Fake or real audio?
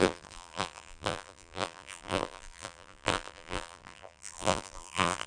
fake